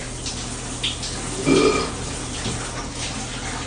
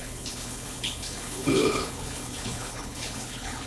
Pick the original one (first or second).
first